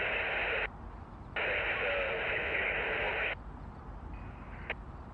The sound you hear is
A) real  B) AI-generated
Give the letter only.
A